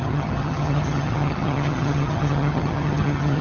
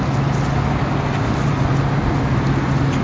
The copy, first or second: first